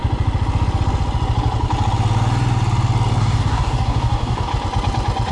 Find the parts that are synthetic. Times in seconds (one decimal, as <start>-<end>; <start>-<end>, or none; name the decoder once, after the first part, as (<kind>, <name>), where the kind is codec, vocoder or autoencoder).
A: 3.2-4.5 (codec, DAC)